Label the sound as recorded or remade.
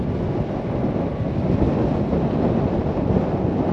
recorded